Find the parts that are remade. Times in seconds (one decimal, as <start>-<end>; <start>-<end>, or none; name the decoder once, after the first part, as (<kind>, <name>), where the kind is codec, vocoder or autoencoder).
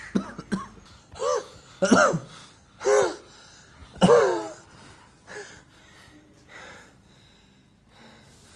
1.2-2.1 (vocoder, BigVGAN v2); 3.8-7.2